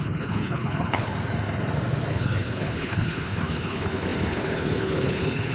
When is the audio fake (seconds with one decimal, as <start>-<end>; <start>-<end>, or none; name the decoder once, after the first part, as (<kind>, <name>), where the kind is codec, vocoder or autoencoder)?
0.0-1.1 (codec, HILCodec); 2.1-5.5